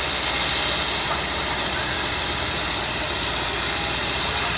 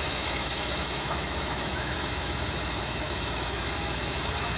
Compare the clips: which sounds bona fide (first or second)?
first